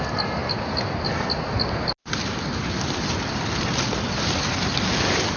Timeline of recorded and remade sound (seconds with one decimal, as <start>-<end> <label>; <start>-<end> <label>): 0.0-5.4 recorded